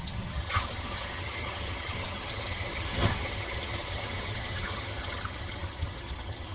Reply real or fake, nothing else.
fake